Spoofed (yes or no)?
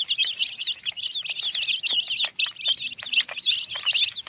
no